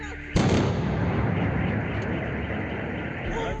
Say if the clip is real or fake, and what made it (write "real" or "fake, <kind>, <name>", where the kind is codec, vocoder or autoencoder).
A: real